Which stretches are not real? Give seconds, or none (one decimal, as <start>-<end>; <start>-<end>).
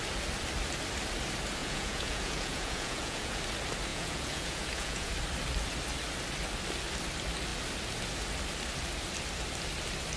1.6-3.4; 3.9-5.1